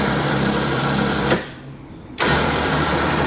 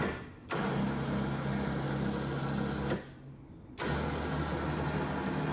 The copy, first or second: first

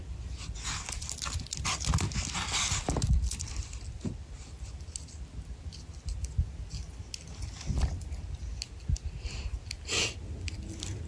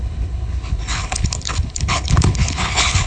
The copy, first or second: second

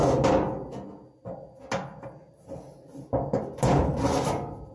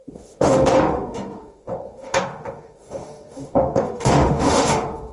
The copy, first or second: second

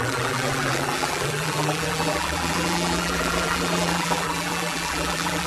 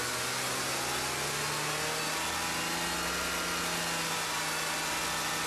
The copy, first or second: first